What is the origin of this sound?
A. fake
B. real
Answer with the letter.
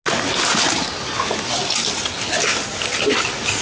B